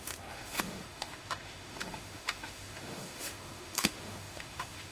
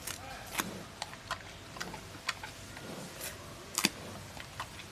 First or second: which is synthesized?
first